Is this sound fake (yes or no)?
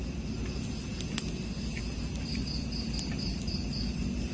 no